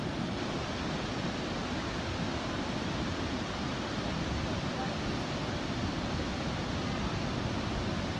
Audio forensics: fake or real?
real